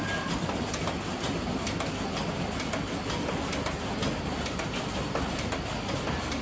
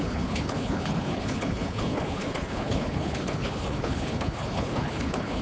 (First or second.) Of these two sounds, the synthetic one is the second